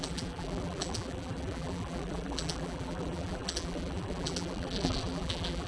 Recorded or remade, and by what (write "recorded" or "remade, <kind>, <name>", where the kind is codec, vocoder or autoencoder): remade, vocoder, BigVGAN v2